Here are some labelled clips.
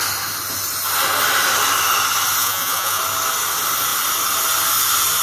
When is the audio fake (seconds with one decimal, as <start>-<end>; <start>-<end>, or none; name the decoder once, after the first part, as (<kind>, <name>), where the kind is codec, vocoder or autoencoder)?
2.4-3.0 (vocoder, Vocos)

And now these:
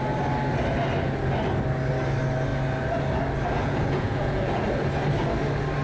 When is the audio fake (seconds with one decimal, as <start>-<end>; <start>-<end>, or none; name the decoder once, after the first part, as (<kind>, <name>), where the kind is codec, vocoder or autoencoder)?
3.6-4.6 (vocoder, Vocos)

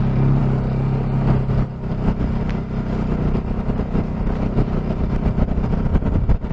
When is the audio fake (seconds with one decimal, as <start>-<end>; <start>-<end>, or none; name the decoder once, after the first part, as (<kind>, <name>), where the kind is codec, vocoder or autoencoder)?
none